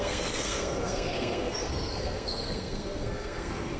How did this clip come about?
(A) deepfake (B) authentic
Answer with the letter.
A